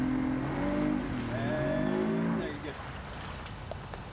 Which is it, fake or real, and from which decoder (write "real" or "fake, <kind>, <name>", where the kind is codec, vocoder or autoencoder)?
real